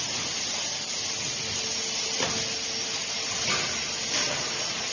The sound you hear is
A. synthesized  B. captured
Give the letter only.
B